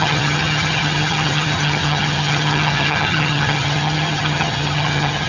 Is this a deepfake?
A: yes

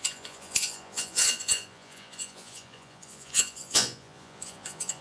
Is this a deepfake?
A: yes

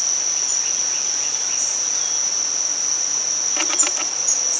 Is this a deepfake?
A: no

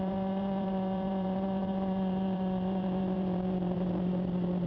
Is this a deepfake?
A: yes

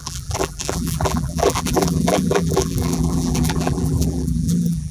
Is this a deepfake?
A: yes